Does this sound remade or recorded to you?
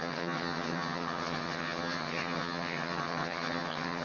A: remade